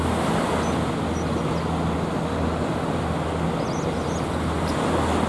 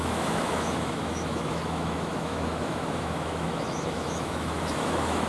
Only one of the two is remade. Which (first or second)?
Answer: second